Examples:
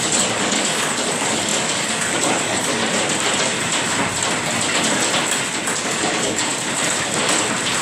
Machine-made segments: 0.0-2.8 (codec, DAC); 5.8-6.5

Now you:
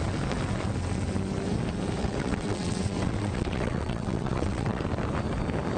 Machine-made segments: 2.0-4.8 (vocoder, WaveNeXt)

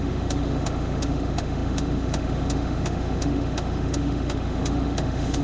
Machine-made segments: 0.0-5.4 (autoencoder, DAC-VAE)

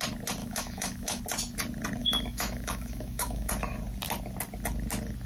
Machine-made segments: 0.4-1.2 (autoencoder, DAC-VAE); 2.0-3.5

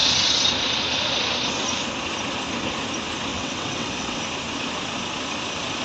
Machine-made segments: 3.3-4.2 (vocoder, WaveNeXt)

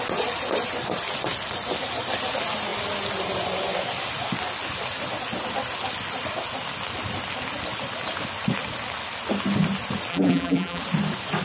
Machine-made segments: 10.1-10.8 (vocoder, BigVGAN v2)